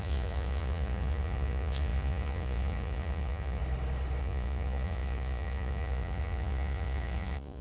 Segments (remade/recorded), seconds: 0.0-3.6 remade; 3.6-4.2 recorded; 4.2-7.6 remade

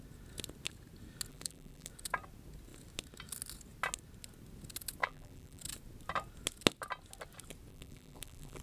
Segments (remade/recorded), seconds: 0.0-1.3 recorded; 1.3-1.9 remade; 1.9-5.0 recorded; 5.0-5.6 remade; 5.6-7.7 recorded; 7.7-8.6 remade

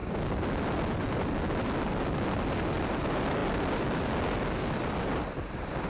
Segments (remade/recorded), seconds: 0.0-5.9 recorded

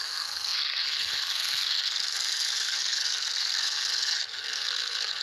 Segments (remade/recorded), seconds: 0.0-5.2 remade